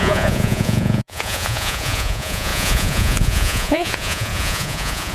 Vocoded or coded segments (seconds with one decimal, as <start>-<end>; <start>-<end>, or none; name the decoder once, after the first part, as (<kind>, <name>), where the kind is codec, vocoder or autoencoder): 0.0-5.1 (vocoder, Vocos)